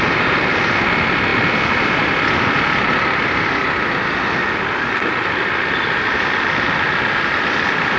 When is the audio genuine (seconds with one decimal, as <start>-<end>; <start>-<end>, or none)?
0.0-8.0